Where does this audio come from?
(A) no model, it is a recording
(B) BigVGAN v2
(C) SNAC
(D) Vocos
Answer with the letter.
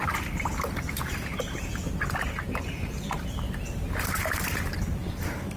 A